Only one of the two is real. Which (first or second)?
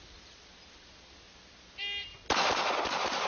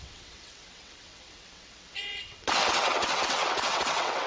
first